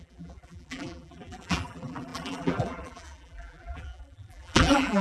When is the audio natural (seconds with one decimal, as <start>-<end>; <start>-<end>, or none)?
none